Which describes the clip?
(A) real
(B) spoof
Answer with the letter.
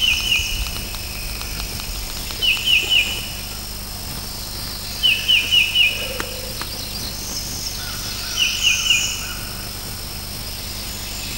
A